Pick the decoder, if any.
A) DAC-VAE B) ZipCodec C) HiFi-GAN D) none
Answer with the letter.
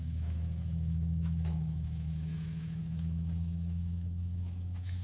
A